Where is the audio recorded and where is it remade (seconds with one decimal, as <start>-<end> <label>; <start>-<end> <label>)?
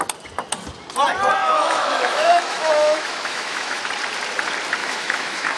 0.0-1.4 recorded; 1.4-3.8 remade; 3.8-4.8 recorded; 4.8-5.6 remade